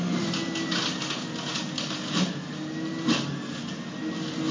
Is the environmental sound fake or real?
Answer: real